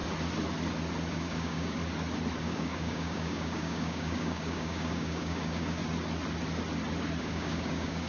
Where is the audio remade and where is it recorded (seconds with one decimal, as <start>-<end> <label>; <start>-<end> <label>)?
0.0-1.1 recorded; 1.1-1.8 remade; 1.8-2.4 recorded; 2.4-5.8 remade; 5.8-7.2 recorded; 7.2-8.1 remade